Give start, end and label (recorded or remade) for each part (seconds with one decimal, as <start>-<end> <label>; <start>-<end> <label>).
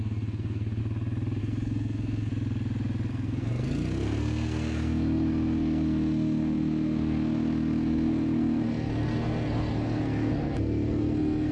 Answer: 0.0-0.8 remade; 0.8-1.4 recorded; 1.4-2.3 remade; 2.3-3.1 recorded; 3.1-11.5 remade